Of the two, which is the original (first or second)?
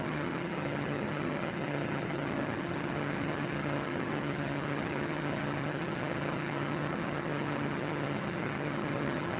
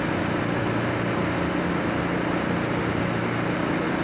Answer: second